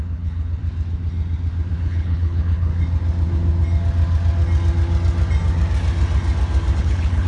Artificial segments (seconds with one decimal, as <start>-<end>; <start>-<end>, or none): 0.0-0.6; 1.7-2.7; 6.8-7.3